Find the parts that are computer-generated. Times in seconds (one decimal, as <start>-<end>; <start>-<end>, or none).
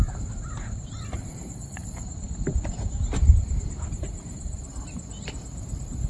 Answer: 0.0-6.1